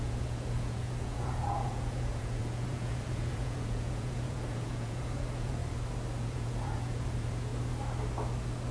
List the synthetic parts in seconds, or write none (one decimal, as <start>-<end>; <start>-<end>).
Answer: 0.0-5.6; 6.2-7.5